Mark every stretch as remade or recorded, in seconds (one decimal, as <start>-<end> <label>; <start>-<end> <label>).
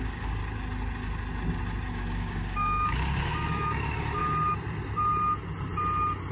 0.0-0.4 remade; 0.4-1.9 recorded; 1.9-4.2 remade; 4.2-6.3 recorded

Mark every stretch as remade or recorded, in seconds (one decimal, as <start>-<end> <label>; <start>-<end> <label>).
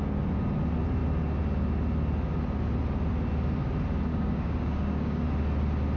0.0-4.1 recorded; 4.1-5.2 remade; 5.2-6.0 recorded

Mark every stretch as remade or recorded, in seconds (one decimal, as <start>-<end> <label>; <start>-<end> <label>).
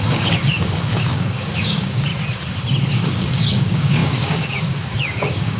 0.0-2.1 remade; 2.1-2.9 recorded; 2.9-5.6 remade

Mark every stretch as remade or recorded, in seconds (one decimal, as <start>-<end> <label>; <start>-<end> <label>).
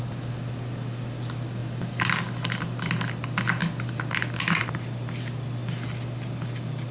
0.0-6.9 recorded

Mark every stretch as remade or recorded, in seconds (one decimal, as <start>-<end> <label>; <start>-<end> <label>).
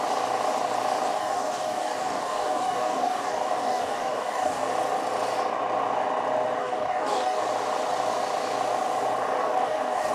0.0-1.1 recorded; 1.1-4.7 remade; 4.7-6.6 recorded; 6.6-7.4 remade; 7.4-9.4 recorded; 9.4-10.1 remade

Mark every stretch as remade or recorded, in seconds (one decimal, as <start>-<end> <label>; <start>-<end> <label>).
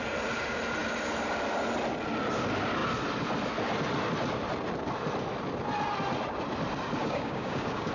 0.0-7.0 recorded; 7.0-7.9 remade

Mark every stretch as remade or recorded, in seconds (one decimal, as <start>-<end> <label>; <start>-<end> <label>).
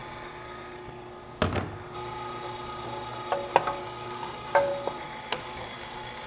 0.0-3.8 recorded; 3.8-4.7 remade; 4.7-5.4 recorded; 5.4-6.3 remade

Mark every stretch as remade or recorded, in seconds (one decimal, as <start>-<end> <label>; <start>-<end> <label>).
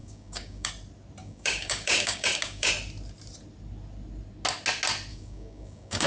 0.0-0.7 remade; 0.7-1.2 recorded; 1.2-2.7 remade; 2.7-5.1 recorded; 5.1-6.1 remade